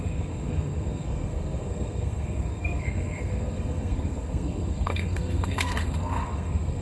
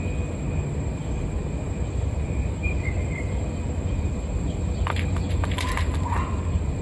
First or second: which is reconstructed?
first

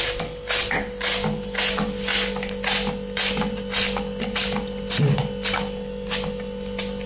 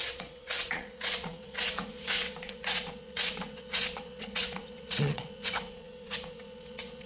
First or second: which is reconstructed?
second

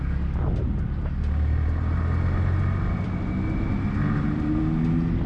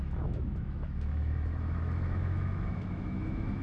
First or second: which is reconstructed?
second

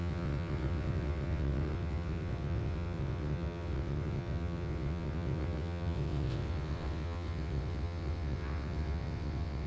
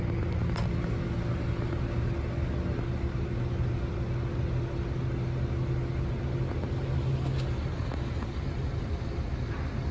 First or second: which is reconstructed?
first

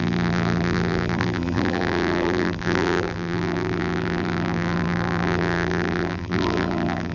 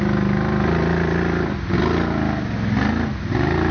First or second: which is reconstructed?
first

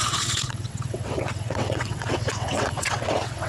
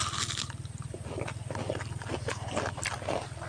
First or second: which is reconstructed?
first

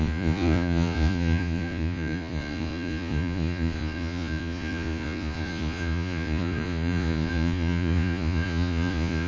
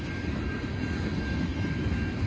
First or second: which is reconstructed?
first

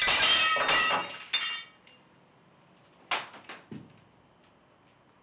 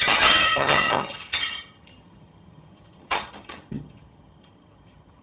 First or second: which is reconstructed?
second